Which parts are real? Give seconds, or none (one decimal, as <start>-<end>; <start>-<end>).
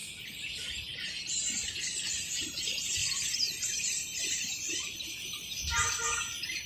0.0-2.2